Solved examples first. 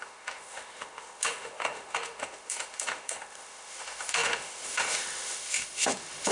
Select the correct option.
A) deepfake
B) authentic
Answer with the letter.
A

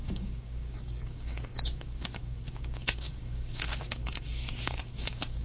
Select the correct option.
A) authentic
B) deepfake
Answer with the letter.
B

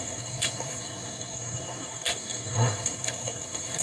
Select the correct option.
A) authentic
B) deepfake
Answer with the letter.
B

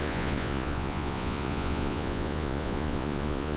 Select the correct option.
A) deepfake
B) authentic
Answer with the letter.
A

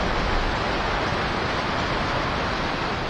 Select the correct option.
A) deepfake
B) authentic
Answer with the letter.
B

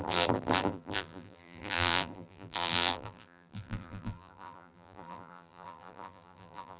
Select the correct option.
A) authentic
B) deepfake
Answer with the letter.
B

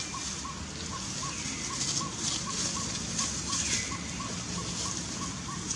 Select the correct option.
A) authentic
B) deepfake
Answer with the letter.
A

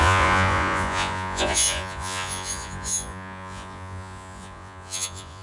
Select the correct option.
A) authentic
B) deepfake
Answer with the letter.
B